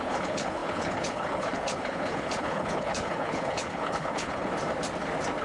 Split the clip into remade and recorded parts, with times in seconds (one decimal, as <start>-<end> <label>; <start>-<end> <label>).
0.0-4.5 remade; 4.5-5.4 recorded